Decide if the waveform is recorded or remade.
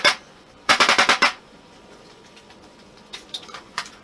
remade